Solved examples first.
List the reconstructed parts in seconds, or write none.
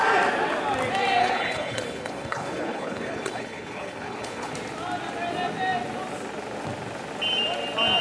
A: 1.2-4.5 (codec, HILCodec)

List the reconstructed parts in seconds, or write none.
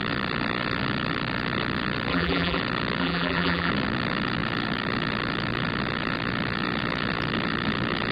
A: 2.1-2.6 (vocoder, BigVGAN v2); 3.0-3.7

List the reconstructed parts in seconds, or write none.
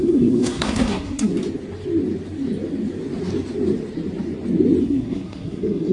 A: 0.0-1.3 (codec, SNAC); 4.8-5.9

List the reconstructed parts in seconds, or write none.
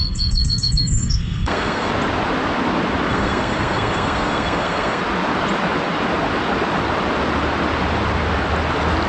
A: 0.0-1.9 (codec, SNAC); 3.1-5.0